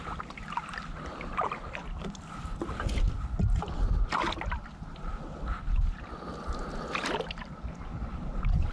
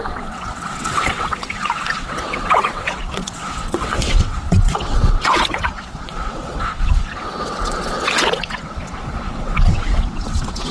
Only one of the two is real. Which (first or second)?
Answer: first